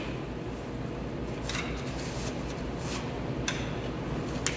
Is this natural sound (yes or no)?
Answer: yes